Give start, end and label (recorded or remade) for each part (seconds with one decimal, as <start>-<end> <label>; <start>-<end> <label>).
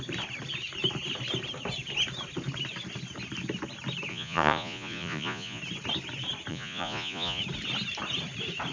0.0-4.1 recorded; 4.1-5.6 remade; 5.6-6.5 recorded; 6.5-7.4 remade; 7.4-8.7 recorded